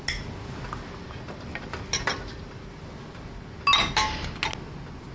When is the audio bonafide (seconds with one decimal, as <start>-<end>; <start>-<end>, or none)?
0.0-5.1